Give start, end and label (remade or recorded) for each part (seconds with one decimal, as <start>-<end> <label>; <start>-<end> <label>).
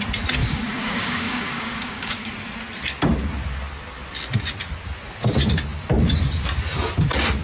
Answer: 0.0-0.4 recorded; 0.4-2.3 remade; 2.3-7.4 recorded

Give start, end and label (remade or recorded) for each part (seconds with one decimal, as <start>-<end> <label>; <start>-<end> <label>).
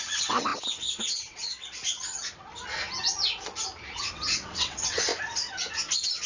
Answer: 0.0-2.5 remade; 2.5-4.1 recorded; 4.1-5.1 remade; 5.1-6.3 recorded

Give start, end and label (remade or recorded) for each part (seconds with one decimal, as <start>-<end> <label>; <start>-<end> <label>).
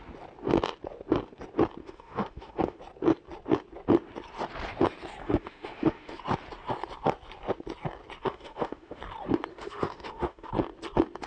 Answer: 0.0-1.8 recorded; 1.8-2.8 remade; 2.8-5.2 recorded; 5.2-6.2 remade; 6.2-8.2 recorded; 8.2-9.0 remade; 9.0-9.5 recorded; 9.5-10.5 remade; 10.5-11.3 recorded